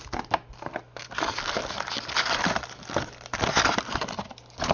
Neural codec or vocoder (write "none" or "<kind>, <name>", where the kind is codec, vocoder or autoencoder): none